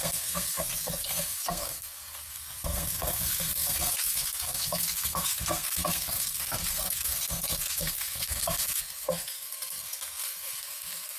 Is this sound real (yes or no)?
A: no